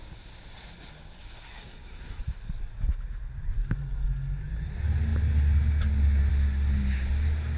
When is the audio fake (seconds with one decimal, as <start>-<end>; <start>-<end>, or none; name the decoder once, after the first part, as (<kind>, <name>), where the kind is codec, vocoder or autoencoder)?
1.5-2.2 (codec, SNAC)